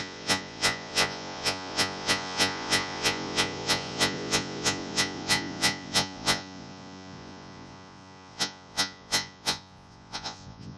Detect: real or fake fake